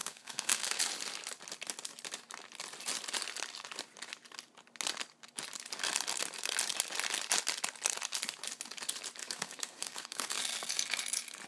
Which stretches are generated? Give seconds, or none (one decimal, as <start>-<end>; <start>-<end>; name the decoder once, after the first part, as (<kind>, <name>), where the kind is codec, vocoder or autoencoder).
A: 0.0-0.8 (codec, SNAC); 9.2-10.4